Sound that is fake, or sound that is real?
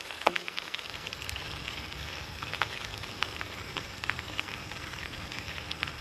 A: fake